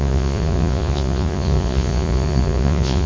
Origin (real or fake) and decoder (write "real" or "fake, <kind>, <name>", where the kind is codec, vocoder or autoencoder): fake, vocoder, Vocos